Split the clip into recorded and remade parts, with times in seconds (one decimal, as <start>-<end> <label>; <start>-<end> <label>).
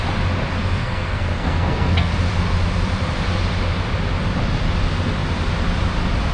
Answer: 0.0-0.6 recorded; 0.6-2.1 remade; 2.1-6.3 recorded